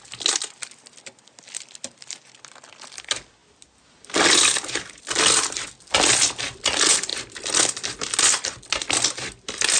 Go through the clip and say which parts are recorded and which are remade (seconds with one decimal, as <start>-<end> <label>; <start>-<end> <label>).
0.0-9.8 recorded